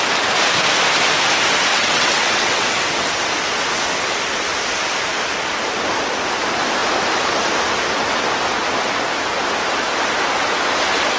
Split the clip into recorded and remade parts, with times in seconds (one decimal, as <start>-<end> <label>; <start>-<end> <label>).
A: 0.0-1.7 recorded; 1.7-2.8 remade; 2.8-11.2 recorded